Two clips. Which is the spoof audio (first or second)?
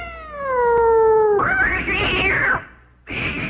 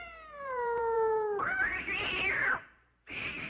second